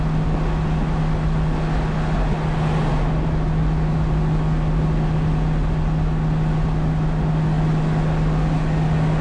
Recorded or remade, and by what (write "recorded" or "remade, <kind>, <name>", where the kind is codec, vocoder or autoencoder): recorded